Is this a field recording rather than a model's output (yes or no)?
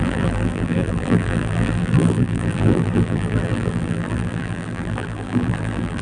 no